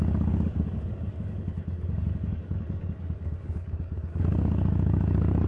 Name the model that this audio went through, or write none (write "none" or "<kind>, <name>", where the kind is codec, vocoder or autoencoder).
codec, DAC